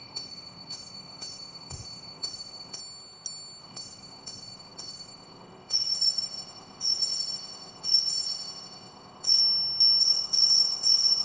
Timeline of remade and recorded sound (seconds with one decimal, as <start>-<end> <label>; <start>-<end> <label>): 0.0-2.8 remade; 2.8-3.6 recorded; 3.6-9.4 remade; 9.4-10.0 recorded; 10.0-11.2 remade